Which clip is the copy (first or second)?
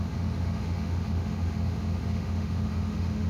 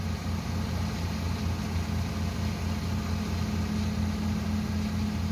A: first